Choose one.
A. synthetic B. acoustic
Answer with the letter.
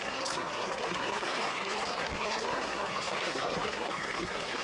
A